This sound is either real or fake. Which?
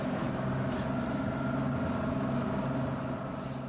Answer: real